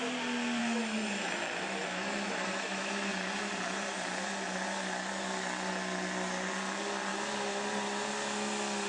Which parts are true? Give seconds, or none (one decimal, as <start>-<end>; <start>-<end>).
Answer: 0.0-0.6; 3.1-8.9